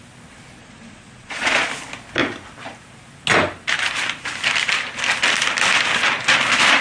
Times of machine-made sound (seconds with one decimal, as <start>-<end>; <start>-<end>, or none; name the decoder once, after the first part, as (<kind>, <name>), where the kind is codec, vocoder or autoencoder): 0.6-1.7 (vocoder, Vocos)